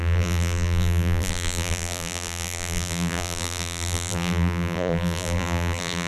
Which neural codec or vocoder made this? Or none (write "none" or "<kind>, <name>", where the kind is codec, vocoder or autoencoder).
vocoder, BigVGAN v2